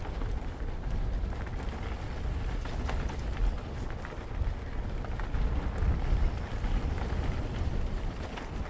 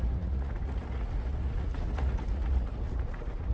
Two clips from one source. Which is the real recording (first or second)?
first